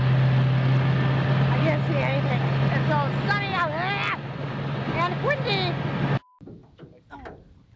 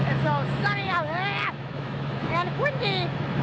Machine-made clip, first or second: second